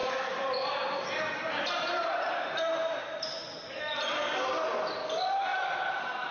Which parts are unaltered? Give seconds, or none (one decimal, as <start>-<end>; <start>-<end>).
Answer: 3.8-5.5